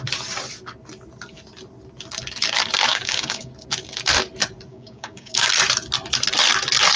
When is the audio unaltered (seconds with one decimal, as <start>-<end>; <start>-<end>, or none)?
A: 0.0-2.9; 3.5-4.7; 5.5-7.0